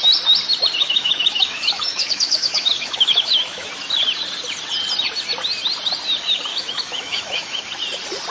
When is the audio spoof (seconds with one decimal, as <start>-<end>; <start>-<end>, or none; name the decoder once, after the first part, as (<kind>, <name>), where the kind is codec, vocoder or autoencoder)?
0.8-3.7 (autoencoder, DAC-VAE); 6.5-7.6

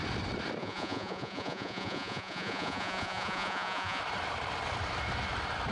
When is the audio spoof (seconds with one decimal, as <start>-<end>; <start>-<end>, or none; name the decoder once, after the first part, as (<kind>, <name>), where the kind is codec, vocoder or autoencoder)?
0.6-4.0 (vocoder, Vocos)